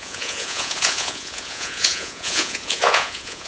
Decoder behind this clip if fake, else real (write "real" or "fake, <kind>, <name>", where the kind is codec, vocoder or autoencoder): fake, vocoder, Vocos